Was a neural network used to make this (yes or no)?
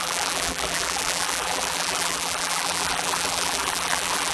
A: yes